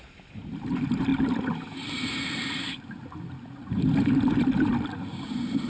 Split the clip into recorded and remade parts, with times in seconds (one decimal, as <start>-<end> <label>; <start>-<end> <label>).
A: 0.0-5.7 recorded